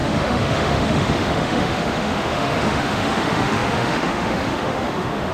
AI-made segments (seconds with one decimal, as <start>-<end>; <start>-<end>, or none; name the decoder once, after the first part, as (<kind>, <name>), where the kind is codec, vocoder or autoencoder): 0.0-5.3 (autoencoder, DAC-VAE)